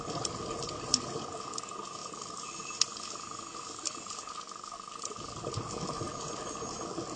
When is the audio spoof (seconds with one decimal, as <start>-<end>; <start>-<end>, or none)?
none